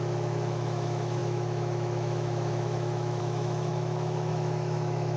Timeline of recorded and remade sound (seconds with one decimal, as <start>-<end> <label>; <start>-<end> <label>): 0.0-5.2 remade